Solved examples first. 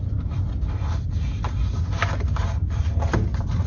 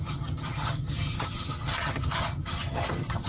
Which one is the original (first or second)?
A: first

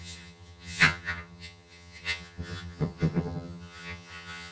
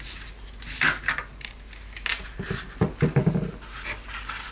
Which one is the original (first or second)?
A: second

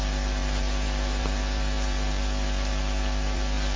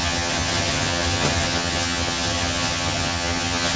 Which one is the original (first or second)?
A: first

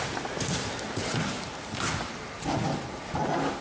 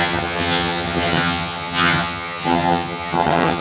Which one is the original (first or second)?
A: first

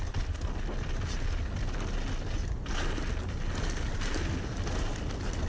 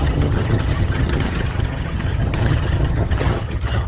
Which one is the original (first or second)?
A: first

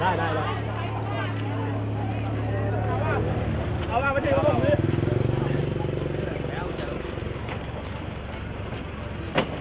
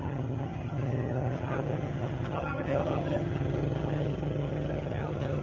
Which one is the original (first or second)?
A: first